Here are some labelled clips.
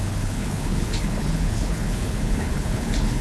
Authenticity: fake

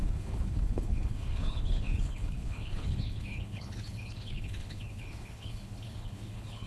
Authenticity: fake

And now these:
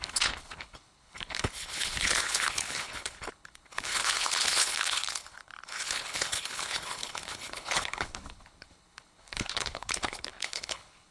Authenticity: fake